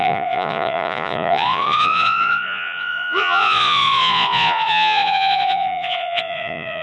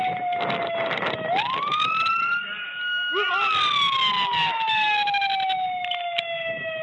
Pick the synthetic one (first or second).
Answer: first